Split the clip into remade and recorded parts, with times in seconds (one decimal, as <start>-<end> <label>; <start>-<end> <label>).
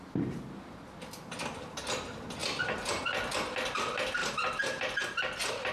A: 0.0-2.4 recorded; 2.4-3.0 remade; 3.0-4.2 recorded; 4.2-4.8 remade; 4.8-5.7 recorded